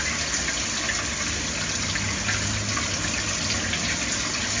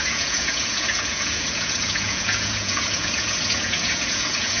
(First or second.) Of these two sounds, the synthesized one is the second